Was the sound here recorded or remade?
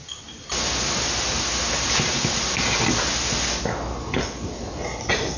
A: recorded